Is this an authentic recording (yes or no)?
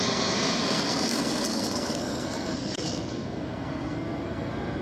no